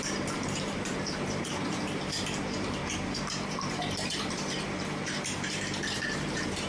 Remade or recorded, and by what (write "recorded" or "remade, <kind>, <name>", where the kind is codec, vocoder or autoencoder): remade, vocoder, BigVGAN v2